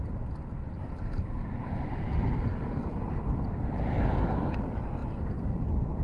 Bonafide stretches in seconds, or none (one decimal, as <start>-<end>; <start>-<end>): 0.0-5.0; 5.6-6.0